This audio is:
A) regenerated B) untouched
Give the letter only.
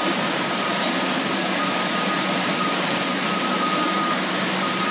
A